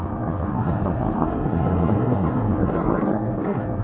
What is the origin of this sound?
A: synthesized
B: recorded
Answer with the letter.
A